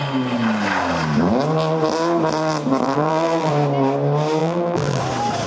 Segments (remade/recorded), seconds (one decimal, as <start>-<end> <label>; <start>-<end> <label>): 0.0-2.8 recorded; 2.8-3.5 remade; 3.5-4.4 recorded; 4.4-5.0 remade; 5.0-5.5 recorded

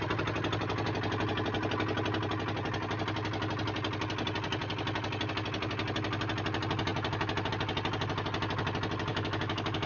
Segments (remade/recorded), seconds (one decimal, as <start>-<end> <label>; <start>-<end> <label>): 0.0-9.1 recorded; 9.1-9.9 remade